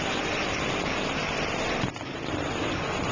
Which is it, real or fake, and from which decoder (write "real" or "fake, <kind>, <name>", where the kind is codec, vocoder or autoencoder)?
real